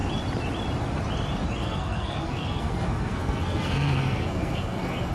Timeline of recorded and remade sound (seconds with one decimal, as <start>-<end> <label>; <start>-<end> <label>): 0.0-1.6 recorded; 1.6-5.1 remade